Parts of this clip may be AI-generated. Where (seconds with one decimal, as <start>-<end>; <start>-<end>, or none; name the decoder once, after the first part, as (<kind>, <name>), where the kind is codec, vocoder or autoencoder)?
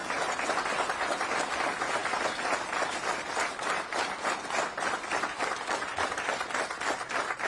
none